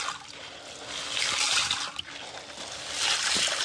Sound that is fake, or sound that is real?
real